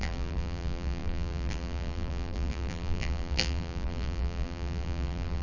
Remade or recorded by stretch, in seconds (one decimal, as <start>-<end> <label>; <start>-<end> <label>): 0.0-5.4 remade